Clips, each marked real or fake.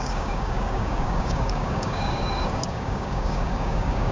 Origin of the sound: fake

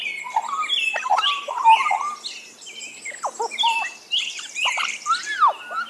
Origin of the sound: real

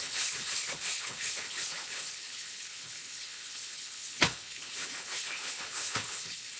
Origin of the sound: fake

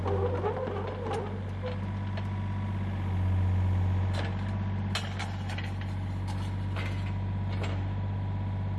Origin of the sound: real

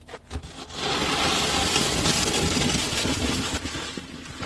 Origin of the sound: real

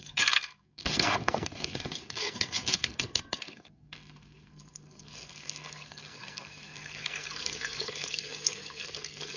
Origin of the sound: fake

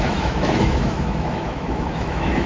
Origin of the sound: fake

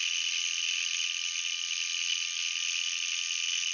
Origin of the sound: real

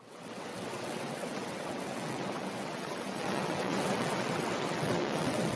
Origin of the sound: fake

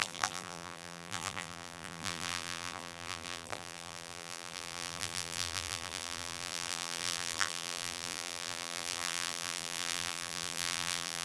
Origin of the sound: fake